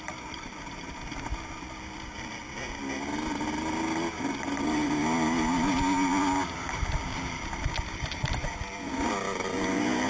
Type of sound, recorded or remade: recorded